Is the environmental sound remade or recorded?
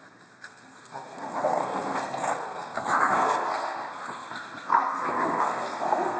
remade